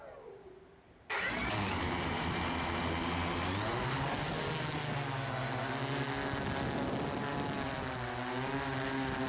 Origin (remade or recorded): recorded